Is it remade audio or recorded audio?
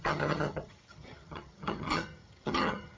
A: remade